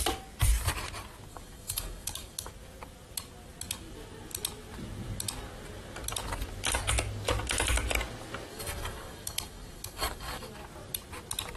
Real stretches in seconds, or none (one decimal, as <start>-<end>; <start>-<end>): 0.0-1.3; 2.5-8.5; 10.5-11.6